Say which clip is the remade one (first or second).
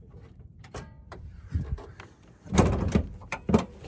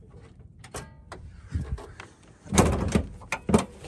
first